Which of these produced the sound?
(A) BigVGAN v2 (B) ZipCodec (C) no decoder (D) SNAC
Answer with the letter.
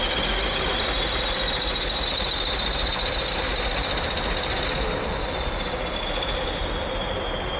C